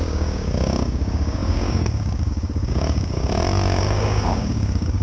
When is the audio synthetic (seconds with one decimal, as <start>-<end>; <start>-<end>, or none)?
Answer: 0.0-5.0